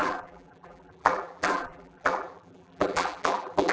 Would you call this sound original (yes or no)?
no